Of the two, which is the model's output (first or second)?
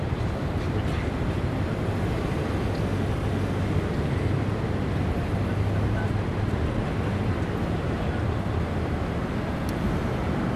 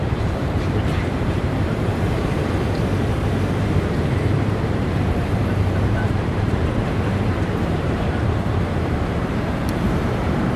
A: second